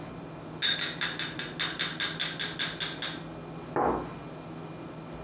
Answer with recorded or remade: recorded